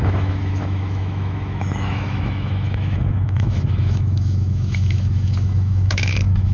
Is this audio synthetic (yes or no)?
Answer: yes